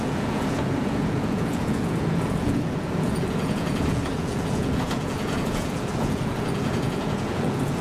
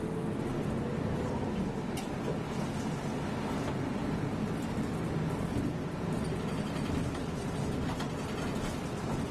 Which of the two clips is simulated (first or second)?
first